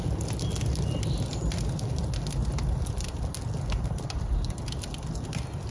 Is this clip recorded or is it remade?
recorded